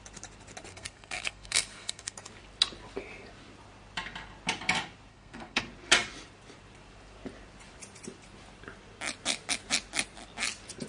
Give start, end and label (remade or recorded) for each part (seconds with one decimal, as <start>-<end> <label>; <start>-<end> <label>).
0.0-0.7 recorded; 0.7-2.3 remade; 2.3-5.1 recorded; 5.1-5.6 remade; 5.6-10.9 recorded

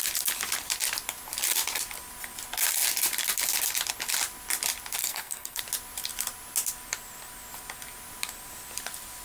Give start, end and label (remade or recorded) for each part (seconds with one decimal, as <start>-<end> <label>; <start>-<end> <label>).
0.0-5.0 recorded; 5.0-5.6 remade; 5.6-9.2 recorded

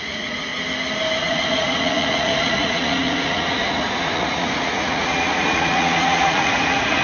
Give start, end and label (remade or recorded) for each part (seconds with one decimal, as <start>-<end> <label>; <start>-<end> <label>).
0.0-0.5 remade; 0.5-1.2 recorded; 1.2-7.0 remade

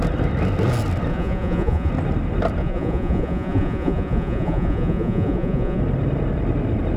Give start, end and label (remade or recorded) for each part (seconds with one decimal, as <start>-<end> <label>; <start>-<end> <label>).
0.0-1.1 recorded; 1.1-1.9 remade; 1.9-2.6 recorded; 2.6-5.8 remade; 5.8-7.0 recorded